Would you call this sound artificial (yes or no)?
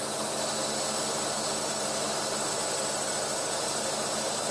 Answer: no